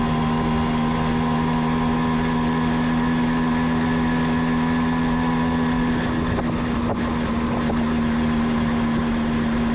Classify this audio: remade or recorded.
recorded